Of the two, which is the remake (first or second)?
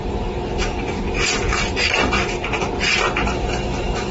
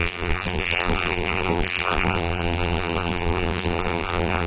second